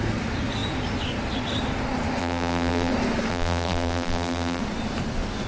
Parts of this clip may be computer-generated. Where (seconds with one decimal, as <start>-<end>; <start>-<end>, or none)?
2.2-2.9; 3.3-4.6